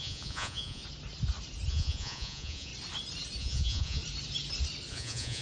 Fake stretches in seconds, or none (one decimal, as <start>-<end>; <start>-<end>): 0.0-0.8; 1.7-2.7; 3.4-4.0; 4.9-5.4